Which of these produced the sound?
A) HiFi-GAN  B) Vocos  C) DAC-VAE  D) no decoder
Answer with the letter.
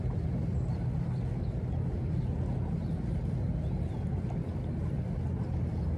D